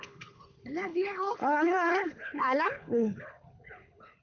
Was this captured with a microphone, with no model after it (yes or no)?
no